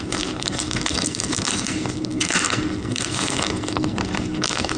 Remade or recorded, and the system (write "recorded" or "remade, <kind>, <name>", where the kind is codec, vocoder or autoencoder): remade, codec, SNAC